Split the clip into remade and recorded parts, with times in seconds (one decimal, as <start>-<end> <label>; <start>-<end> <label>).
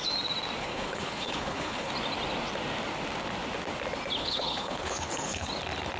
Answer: 0.0-0.6 recorded; 0.6-1.9 remade; 1.9-4.2 recorded; 4.2-5.5 remade; 5.5-6.0 recorded